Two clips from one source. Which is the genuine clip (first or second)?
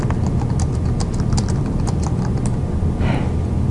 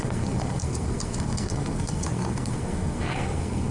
first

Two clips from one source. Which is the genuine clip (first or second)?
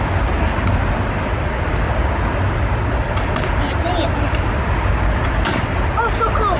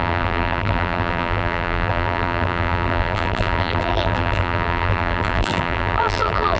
first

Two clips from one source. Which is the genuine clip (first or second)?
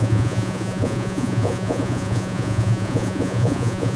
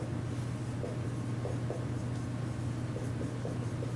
second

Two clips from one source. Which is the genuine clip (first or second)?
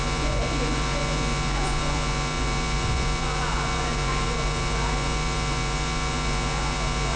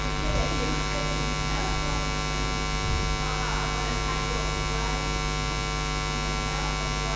second